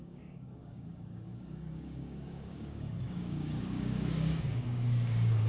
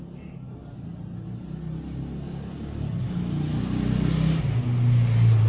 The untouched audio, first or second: second